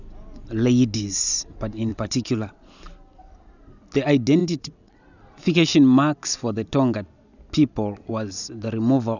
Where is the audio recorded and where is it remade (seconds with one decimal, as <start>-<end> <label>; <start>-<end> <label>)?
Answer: 0.0-1.9 recorded; 1.9-2.7 remade; 2.7-4.4 recorded; 4.4-5.0 remade; 5.0-9.2 recorded